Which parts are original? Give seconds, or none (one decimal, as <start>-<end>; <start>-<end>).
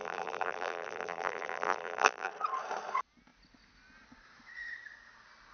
2.3-5.5